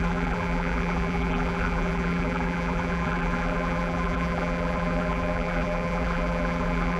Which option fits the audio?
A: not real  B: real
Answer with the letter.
A